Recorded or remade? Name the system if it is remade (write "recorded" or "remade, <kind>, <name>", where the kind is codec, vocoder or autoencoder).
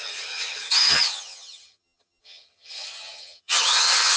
remade, vocoder, HiFi-GAN